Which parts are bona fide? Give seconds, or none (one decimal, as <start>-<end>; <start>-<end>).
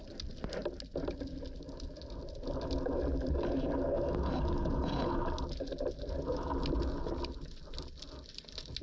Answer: 0.0-4.6; 5.2-8.8